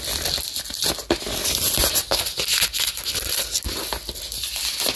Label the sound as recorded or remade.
recorded